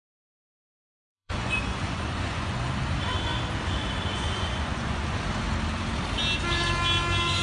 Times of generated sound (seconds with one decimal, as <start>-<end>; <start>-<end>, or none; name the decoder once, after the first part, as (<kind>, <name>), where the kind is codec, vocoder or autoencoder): 0.0-2.7 (vocoder, Vocos); 4.1-5.2